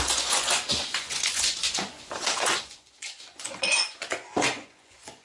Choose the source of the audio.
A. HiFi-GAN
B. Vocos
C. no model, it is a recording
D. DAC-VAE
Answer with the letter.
B